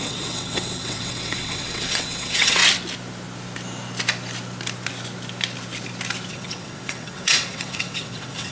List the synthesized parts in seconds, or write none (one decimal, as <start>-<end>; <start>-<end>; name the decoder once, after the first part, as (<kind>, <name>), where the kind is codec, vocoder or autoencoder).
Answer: 0.0-2.6 (vocoder, WaveNeXt); 6.3-8.5

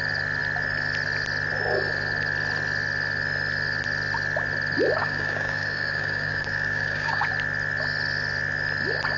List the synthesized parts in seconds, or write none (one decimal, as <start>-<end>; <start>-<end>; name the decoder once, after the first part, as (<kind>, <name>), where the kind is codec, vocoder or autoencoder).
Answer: 5.0-7.3 (codec, DAC)

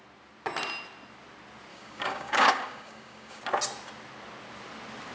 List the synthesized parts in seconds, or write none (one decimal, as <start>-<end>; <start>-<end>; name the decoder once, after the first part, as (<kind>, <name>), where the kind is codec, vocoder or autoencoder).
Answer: 1.7-3.4 (codec, DAC)

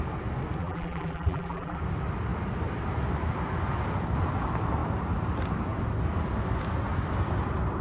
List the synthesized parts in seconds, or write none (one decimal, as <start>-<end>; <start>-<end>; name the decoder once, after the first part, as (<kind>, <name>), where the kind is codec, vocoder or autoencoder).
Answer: 0.6-1.8 (vocoder, BigVGAN v2)

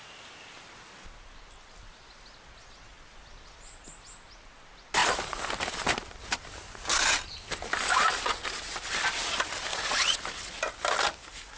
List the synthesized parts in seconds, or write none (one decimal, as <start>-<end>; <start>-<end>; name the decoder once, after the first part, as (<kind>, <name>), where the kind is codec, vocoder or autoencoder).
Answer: 9.7-10.2 (vocoder, Vocos)

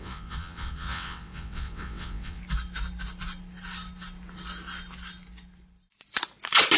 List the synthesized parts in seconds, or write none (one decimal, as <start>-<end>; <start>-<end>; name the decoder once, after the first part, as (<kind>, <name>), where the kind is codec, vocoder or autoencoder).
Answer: 0.0-2.4 (vocoder, WaveNeXt)